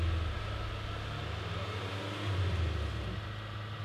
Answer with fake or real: real